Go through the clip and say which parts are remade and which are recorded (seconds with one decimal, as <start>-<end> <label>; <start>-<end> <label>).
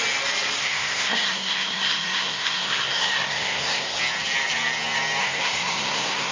0.0-0.6 recorded; 0.6-4.0 remade; 4.0-5.2 recorded; 5.2-6.3 remade